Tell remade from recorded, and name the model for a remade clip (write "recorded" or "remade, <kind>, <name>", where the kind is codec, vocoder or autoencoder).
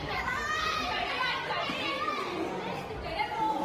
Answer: recorded